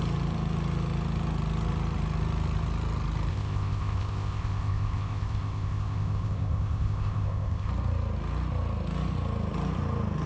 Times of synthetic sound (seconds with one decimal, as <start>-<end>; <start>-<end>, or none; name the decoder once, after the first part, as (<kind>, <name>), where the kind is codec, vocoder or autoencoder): 3.3-7.7 (codec, ZipCodec)